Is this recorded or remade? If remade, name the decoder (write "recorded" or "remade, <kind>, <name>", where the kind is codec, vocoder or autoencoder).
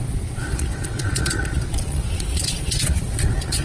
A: remade, vocoder, Vocos